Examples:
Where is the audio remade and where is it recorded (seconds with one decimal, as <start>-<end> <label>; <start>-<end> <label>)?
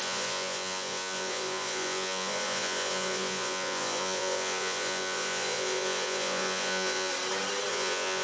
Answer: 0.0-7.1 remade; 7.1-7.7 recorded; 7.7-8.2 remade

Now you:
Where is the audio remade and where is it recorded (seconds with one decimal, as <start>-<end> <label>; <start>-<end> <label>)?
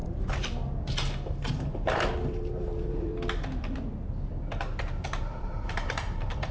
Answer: 0.0-1.4 recorded; 1.4-3.1 remade; 3.1-5.2 recorded; 5.2-6.5 remade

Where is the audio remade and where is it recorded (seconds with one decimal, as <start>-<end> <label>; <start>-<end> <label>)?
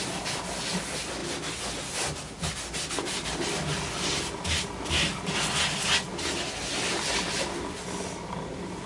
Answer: 0.0-8.9 recorded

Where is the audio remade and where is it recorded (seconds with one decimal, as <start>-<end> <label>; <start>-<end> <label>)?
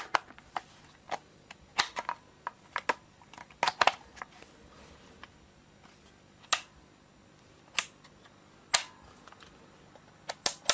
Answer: 0.0-10.7 recorded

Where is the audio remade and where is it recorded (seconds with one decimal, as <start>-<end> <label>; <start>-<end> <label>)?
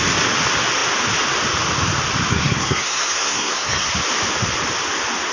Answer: 0.0-2.3 recorded; 2.3-3.9 remade; 3.9-5.3 recorded